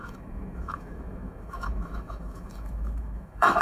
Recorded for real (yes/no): no